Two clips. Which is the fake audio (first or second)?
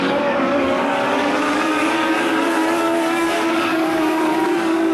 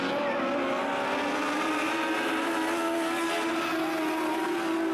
first